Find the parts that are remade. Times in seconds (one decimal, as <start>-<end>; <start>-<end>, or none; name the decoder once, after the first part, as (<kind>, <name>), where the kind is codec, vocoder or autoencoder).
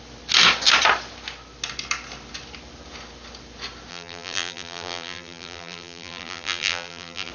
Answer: 3.9-7.3 (vocoder, BigVGAN v2)